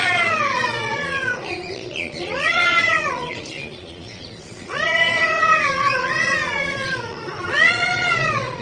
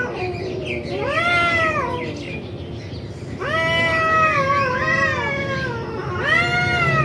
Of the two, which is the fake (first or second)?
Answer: first